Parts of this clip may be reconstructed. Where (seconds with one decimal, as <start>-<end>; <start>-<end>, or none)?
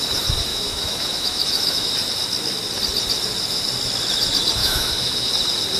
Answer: 0.5-1.9; 4.6-5.3